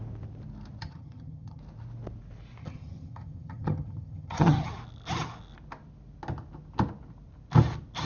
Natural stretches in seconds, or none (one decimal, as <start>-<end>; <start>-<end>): 0.0-0.8; 1.6-2.6; 4.7-8.1